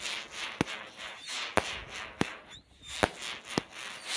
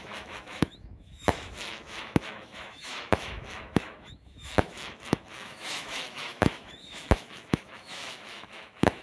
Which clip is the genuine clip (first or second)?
first